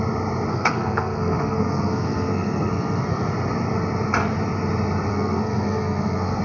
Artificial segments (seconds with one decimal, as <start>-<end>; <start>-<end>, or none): 0.5-3.3; 5.1-6.4